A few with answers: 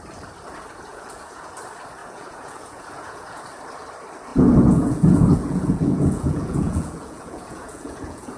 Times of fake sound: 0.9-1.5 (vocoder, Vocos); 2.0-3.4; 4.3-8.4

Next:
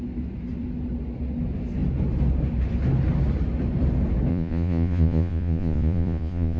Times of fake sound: 4.3-6.6 (vocoder, Vocos)

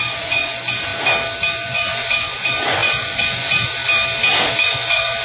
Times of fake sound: 0.0-0.9 (vocoder, Vocos); 1.5-3.8; 4.6-5.2

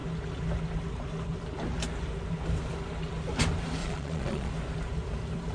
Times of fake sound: 3.8-4.5 (vocoder, Vocos)

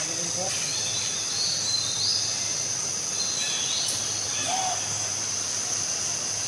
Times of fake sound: none